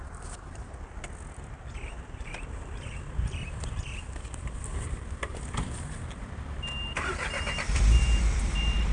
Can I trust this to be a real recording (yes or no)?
no